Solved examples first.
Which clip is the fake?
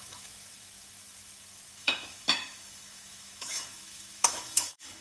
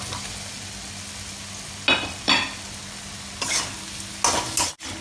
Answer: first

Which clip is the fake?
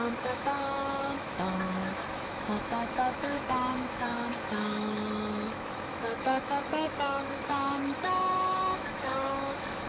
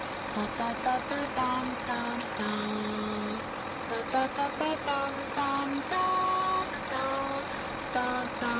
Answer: first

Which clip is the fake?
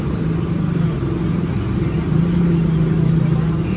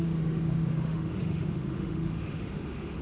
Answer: second